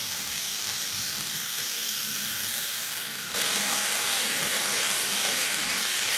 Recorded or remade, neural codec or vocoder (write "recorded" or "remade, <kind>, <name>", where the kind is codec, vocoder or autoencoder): remade, codec, DAC